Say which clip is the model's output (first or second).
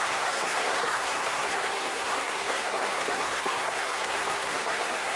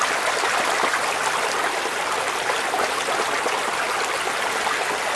first